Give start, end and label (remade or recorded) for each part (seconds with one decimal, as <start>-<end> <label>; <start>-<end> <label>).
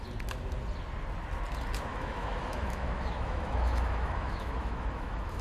0.0-1.9 recorded; 1.9-5.4 remade